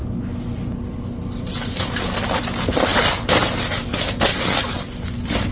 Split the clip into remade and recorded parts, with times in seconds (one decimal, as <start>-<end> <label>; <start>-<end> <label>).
0.0-5.5 recorded